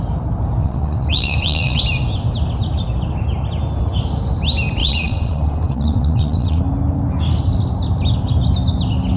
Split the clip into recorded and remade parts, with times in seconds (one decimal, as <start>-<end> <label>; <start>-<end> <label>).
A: 0.0-0.6 recorded; 0.6-1.8 remade; 1.8-4.8 recorded; 4.8-6.6 remade; 6.6-9.2 recorded